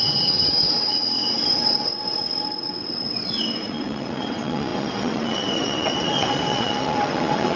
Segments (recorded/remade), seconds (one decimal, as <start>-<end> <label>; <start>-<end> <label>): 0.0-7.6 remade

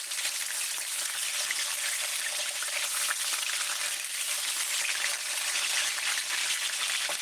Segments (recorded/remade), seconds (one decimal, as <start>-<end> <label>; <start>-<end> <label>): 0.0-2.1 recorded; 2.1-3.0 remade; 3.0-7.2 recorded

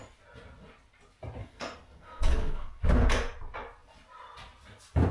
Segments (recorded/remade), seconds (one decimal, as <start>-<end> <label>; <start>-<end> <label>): 0.0-1.4 recorded; 1.4-2.8 remade; 2.8-5.1 recorded